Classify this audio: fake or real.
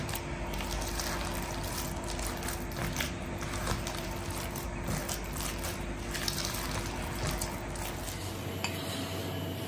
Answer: real